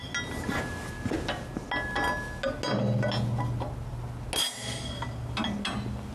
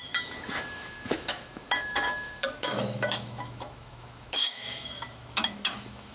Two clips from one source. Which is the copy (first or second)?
second